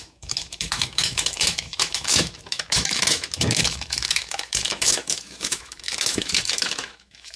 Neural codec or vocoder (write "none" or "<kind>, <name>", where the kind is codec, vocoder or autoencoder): autoencoder, DAC-VAE